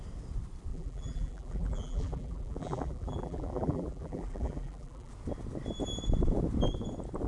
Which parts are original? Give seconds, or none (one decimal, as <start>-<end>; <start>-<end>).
0.0-0.7; 5.1-7.3